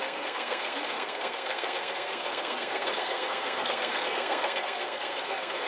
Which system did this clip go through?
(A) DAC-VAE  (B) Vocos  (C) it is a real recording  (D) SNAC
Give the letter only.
D